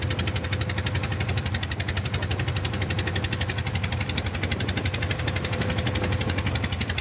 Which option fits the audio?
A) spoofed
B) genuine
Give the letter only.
B